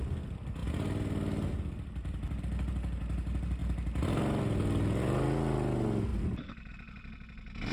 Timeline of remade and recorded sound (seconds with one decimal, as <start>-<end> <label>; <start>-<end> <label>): 0.0-0.6 recorded; 0.6-2.4 remade; 2.4-3.6 recorded; 3.6-4.4 remade; 4.4-6.1 recorded; 6.1-6.7 remade; 6.7-7.7 recorded